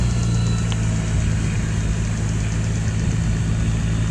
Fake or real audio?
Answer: real